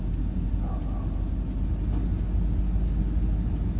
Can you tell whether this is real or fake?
real